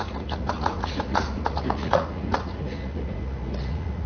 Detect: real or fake fake